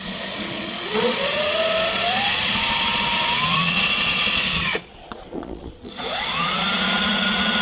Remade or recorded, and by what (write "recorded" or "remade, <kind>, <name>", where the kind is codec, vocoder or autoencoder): remade, vocoder, Vocos